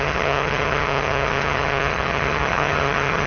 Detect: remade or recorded remade